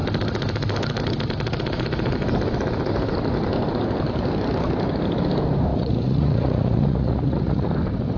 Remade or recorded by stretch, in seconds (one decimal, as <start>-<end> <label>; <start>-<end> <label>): 0.0-5.7 recorded; 5.7-7.7 remade; 7.7-8.2 recorded

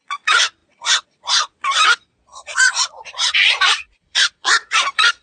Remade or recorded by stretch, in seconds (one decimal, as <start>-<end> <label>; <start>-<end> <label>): 0.0-5.2 remade

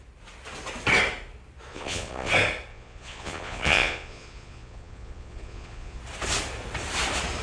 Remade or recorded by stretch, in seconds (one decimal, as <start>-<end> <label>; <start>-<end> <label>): 0.0-1.7 recorded; 1.7-2.3 remade; 2.3-2.7 recorded; 2.7-6.0 remade; 6.0-7.4 recorded